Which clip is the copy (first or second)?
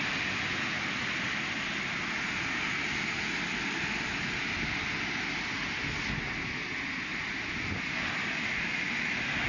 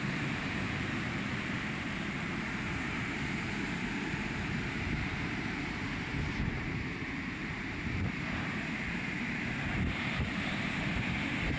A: second